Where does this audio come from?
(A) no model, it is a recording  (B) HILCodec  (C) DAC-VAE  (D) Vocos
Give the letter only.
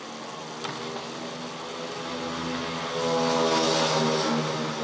A